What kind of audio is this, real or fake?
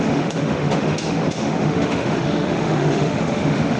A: fake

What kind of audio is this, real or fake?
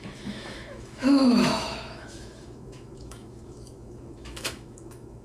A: fake